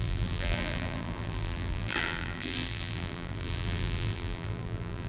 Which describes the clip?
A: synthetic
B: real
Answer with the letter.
A